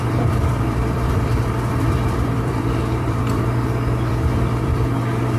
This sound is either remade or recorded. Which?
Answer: remade